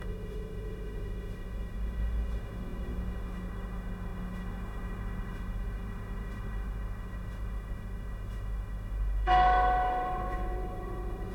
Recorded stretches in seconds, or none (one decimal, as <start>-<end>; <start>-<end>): none